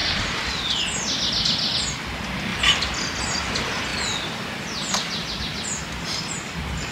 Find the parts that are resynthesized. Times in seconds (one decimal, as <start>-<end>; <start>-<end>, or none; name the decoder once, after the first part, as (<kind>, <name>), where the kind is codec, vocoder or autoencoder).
2.5-3.2 (vocoder, BigVGAN v2)